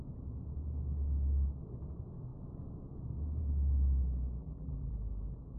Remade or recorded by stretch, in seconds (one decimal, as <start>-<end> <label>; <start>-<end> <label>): 0.0-4.4 recorded; 4.4-4.9 remade; 4.9-5.6 recorded